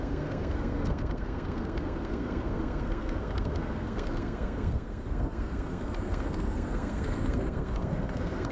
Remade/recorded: remade